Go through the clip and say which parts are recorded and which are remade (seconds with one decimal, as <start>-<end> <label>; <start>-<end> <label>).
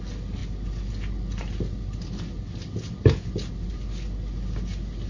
0.0-5.1 recorded